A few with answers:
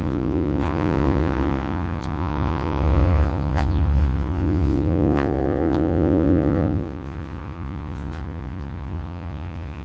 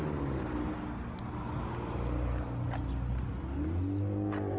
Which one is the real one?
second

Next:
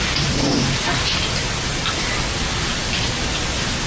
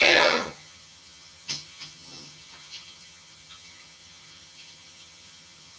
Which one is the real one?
first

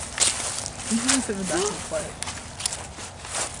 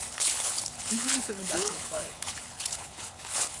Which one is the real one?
first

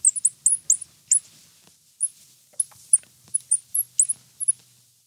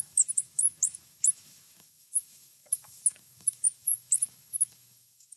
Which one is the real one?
first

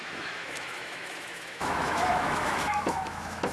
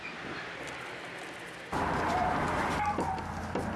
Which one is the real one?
second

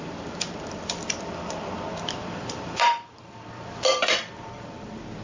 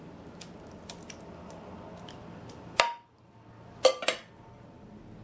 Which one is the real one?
second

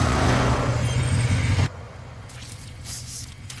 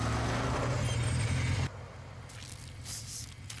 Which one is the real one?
second